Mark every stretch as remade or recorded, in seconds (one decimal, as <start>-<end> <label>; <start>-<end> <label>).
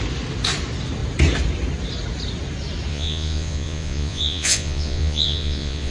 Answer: 0.0-2.9 recorded; 2.9-5.9 remade